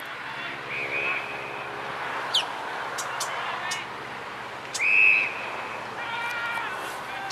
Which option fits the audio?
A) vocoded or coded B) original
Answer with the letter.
B